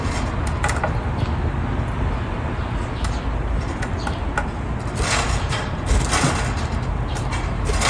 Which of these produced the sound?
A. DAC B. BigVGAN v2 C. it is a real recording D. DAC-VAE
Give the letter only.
C